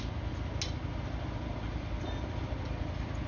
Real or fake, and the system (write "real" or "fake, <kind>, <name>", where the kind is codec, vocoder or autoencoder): real